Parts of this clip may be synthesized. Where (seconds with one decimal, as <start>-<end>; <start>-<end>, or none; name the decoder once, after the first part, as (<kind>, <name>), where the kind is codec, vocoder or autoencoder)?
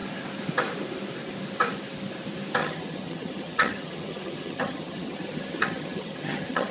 2.6-6.7 (vocoder, HiFi-GAN)